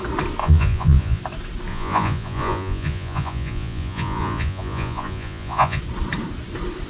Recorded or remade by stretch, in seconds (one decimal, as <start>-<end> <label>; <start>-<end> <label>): 0.0-0.4 recorded; 0.4-1.2 remade; 1.2-1.7 recorded; 1.7-5.8 remade; 5.8-6.9 recorded